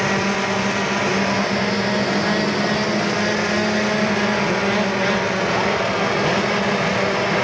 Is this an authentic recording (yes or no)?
yes